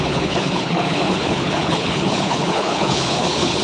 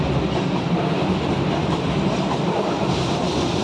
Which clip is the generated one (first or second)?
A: first